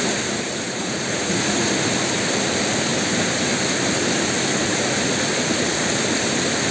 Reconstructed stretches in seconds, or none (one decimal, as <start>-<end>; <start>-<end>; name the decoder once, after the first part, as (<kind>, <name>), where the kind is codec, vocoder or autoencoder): 0.8-1.7 (vocoder, Vocos)